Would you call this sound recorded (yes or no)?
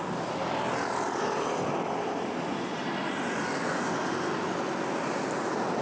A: yes